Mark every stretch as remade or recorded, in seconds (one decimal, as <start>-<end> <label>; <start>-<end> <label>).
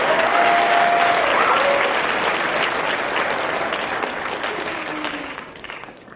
0.0-1.3 remade; 1.3-4.5 recorded; 4.5-6.2 remade